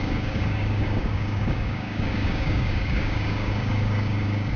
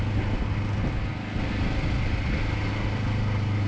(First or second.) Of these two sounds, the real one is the second